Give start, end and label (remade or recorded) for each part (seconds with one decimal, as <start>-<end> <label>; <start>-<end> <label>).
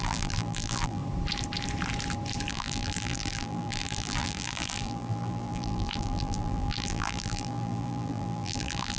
0.0-1.0 remade; 1.0-2.5 recorded; 2.5-9.0 remade